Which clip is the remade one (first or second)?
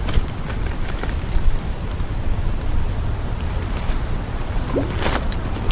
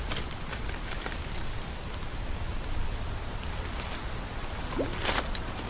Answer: first